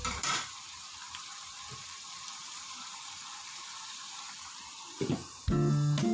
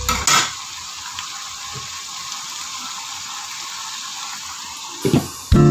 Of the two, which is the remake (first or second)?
first